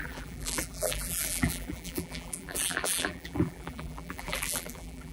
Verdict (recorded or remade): remade